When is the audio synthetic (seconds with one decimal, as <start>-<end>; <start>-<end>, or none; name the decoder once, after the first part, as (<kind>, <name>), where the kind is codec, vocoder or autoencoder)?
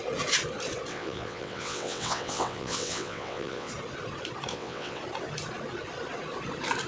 0.9-3.7 (vocoder, WaveNeXt); 4.5-5.0